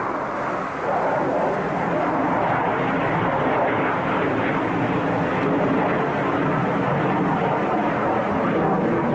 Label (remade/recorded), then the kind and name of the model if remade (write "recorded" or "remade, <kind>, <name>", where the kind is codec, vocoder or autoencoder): recorded